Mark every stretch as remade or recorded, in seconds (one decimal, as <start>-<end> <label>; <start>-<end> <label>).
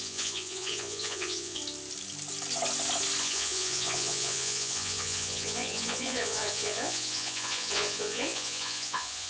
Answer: 0.0-1.6 remade; 1.6-3.2 recorded; 3.2-9.3 remade